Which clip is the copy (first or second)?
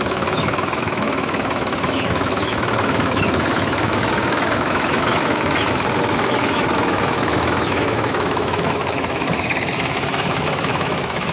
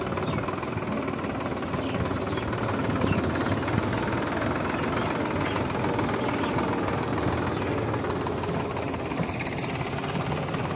first